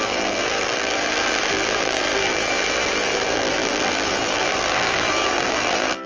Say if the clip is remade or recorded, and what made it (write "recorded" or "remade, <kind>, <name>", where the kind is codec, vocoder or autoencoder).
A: remade, vocoder, BigVGAN v2